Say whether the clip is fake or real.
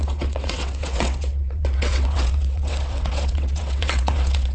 fake